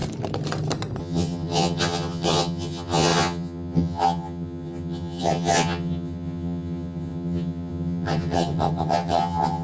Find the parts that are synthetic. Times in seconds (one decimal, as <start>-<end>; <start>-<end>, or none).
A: 1.0-9.6